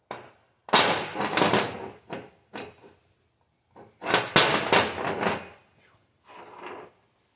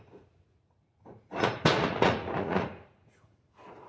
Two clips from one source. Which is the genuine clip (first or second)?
first